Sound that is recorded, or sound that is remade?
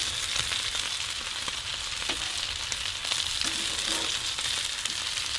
recorded